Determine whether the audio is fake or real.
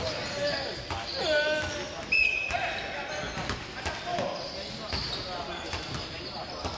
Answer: real